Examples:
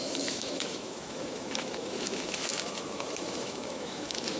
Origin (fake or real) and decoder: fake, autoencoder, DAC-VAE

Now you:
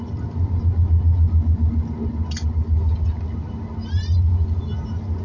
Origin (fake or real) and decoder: real